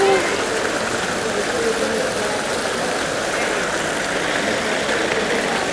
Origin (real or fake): real